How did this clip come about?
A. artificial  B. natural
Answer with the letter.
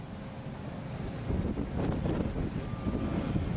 B